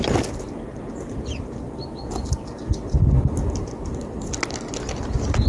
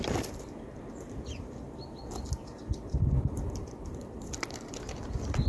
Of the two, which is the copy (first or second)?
second